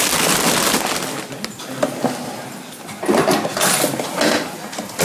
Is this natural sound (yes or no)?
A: yes